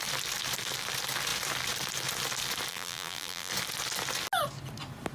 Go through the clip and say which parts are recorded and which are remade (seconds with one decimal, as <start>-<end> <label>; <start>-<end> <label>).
0.0-2.7 recorded; 2.7-3.5 remade; 3.5-5.1 recorded